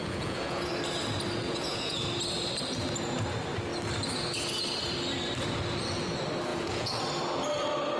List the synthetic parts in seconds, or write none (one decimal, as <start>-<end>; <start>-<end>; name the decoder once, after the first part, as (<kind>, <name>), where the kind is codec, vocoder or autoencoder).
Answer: 0.0-0.7 (vocoder, Vocos); 1.4-2.0; 6.5-7.0